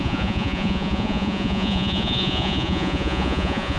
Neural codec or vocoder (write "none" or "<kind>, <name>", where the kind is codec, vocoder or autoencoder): vocoder, Vocos